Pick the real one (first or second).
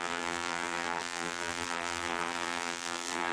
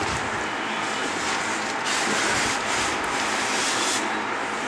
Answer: second